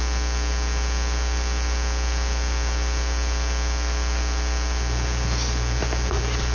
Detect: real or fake real